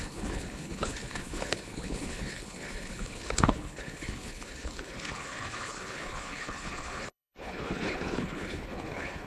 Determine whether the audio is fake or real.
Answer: fake